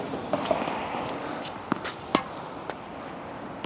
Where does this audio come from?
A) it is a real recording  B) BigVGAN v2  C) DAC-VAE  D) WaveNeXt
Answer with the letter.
A